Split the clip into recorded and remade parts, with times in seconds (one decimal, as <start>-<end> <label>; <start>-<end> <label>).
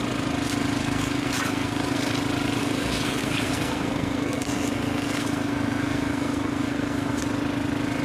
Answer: 0.0-0.8 recorded; 0.8-2.1 remade; 2.1-2.6 recorded; 2.6-7.2 remade; 7.2-8.0 recorded